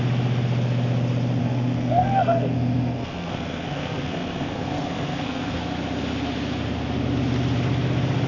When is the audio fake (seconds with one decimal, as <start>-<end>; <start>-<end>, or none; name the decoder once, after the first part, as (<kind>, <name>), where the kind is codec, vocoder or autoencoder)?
1.4-5.6 (codec, SNAC)